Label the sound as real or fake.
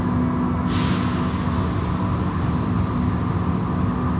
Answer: real